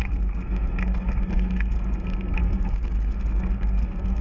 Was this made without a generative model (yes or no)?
no